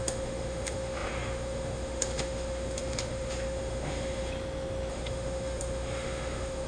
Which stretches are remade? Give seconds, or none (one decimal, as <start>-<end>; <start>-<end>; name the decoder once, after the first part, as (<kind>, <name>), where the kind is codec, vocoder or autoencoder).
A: 0.0-4.3 (autoencoder, DAC-VAE); 4.9-6.7